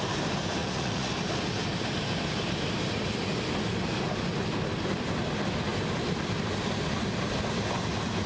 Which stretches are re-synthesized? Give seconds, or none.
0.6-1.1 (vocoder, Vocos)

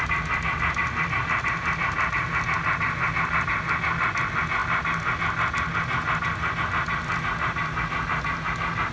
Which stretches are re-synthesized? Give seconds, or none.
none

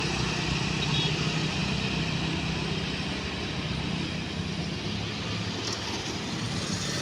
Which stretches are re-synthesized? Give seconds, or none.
none